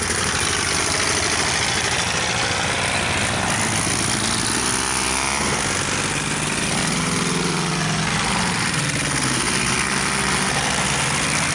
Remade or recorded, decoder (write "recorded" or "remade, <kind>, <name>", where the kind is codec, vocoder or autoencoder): recorded